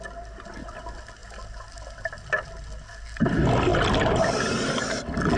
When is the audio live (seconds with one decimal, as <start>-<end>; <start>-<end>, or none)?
0.0-5.4